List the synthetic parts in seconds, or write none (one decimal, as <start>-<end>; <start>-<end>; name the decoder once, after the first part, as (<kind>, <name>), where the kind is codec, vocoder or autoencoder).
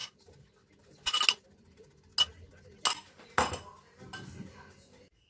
none